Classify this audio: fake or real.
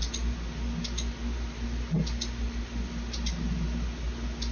real